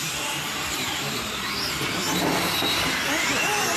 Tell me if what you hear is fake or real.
fake